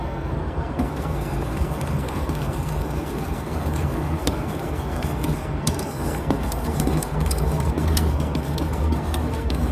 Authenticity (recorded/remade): remade